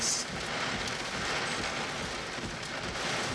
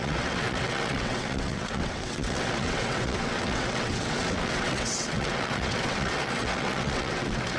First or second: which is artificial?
second